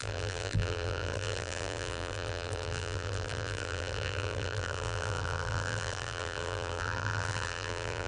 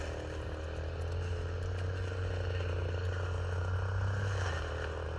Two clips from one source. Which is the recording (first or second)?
second